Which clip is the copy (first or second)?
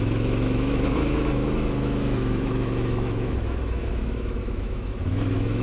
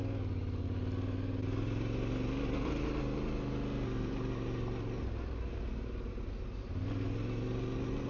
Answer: first